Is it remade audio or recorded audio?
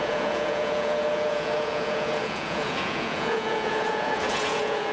remade